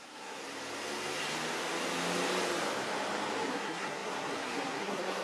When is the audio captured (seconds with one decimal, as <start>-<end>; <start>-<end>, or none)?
0.4-3.5

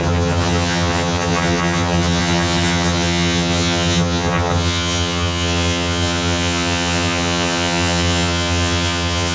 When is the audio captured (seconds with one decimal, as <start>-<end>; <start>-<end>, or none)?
none